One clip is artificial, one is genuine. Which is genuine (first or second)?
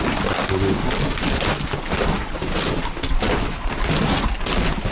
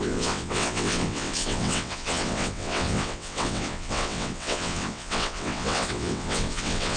first